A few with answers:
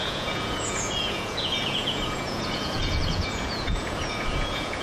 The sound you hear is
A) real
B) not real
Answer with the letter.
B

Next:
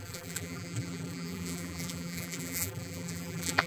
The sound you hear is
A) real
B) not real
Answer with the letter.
B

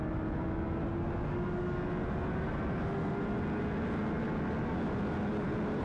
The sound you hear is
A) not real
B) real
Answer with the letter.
B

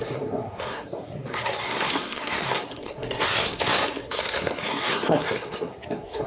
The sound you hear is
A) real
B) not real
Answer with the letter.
B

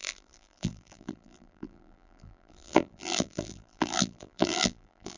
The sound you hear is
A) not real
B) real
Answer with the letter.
A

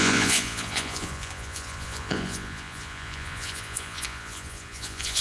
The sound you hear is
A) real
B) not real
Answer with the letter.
B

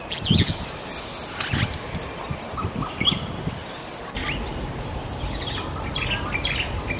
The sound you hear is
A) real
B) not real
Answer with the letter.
A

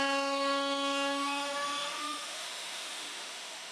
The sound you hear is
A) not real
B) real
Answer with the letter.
A